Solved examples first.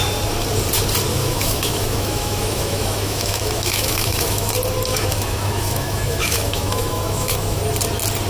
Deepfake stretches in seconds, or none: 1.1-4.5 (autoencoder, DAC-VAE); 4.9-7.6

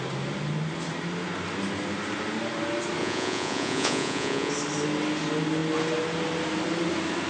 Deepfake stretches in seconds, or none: 3.0-4.5 (vocoder, Vocos)

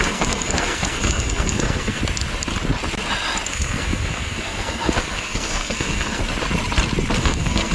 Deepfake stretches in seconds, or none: 0.0-2.0 (codec, SNAC); 3.5-6.2; 7.2-7.7

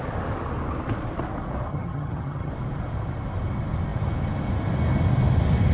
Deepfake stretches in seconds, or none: 1.7-2.5 (vocoder, HiFi-GAN)

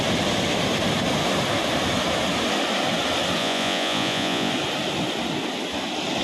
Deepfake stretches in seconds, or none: 3.4-4.5 (vocoder, Vocos)

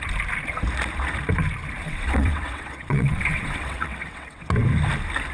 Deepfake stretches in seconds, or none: 1.8-4.5 (vocoder, WaveNeXt)

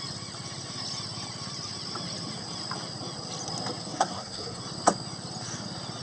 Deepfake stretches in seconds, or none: 3.8-4.6 (codec, SNAC)